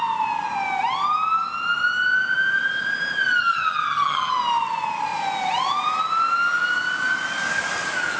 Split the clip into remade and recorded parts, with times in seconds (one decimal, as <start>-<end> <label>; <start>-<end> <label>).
0.0-3.4 recorded; 3.4-4.3 remade; 4.3-8.2 recorded